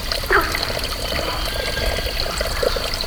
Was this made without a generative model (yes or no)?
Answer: yes